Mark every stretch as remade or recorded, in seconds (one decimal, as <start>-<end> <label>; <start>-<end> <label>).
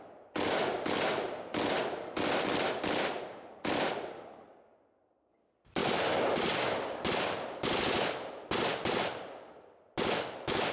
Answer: 0.0-10.7 recorded